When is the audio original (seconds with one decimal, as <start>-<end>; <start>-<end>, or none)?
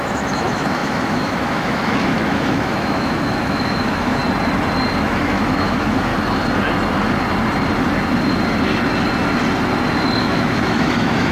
4.2-5.0; 6.1-10.2